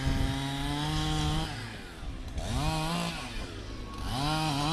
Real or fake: real